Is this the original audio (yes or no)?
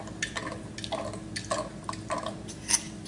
yes